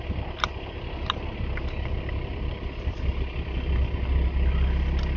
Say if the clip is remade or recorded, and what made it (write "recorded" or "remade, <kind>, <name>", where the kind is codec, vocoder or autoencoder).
recorded